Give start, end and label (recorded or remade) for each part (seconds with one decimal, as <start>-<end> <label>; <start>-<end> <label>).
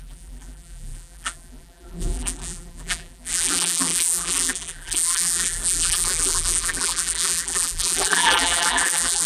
0.0-9.3 remade